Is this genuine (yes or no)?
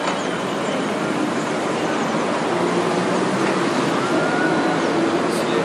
yes